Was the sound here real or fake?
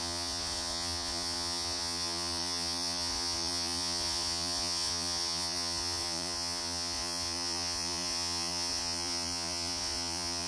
fake